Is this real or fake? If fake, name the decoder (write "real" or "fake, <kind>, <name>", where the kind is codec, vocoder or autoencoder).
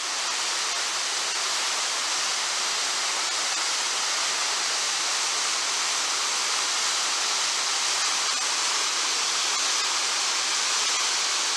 real